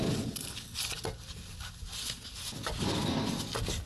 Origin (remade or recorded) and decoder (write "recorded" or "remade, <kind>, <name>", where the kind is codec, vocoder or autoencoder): recorded